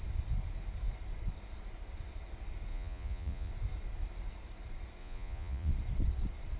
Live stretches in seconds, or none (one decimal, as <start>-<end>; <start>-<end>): 0.0-2.7; 3.5-5.0; 5.7-6.6